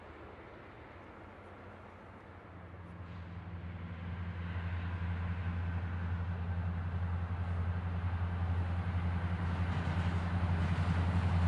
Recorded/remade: recorded